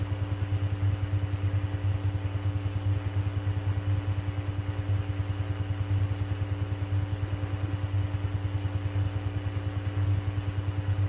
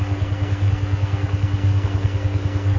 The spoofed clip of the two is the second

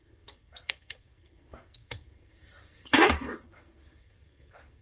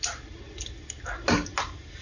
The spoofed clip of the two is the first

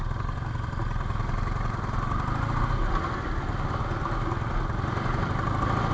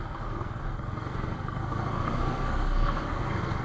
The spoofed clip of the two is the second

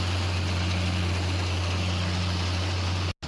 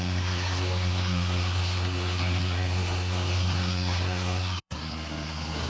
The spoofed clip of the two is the second